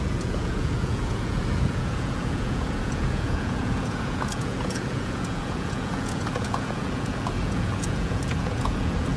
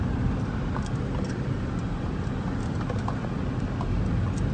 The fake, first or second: first